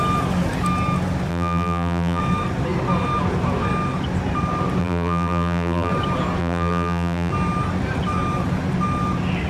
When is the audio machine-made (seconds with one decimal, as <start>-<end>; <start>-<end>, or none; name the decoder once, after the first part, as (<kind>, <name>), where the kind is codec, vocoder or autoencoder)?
1.3-2.2 (vocoder, BigVGAN v2); 4.8-5.9; 6.4-7.3